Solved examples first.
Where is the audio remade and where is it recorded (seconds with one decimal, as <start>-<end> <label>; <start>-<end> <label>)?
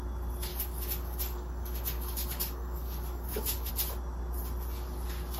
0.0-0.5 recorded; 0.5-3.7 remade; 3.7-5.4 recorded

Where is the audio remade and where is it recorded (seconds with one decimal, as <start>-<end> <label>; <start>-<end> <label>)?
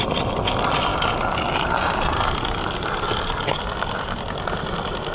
0.0-5.1 recorded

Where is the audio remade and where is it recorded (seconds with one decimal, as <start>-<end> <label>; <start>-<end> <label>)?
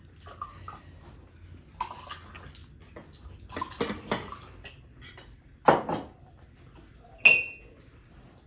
0.0-8.5 recorded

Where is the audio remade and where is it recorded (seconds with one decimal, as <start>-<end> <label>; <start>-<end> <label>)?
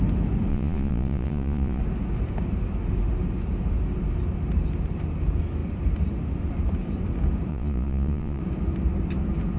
0.0-0.5 recorded; 0.5-1.8 remade; 1.8-7.5 recorded; 7.5-8.4 remade; 8.4-9.6 recorded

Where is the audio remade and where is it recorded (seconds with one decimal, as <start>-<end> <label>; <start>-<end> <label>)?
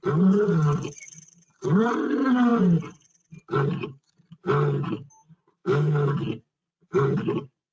0.0-5.6 recorded; 5.6-6.1 remade; 6.1-7.7 recorded